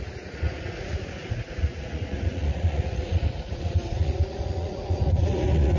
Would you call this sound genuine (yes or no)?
no